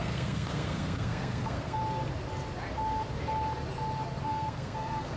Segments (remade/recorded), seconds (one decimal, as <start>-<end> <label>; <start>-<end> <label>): 0.0-1.8 remade; 1.8-4.2 recorded; 4.2-5.2 remade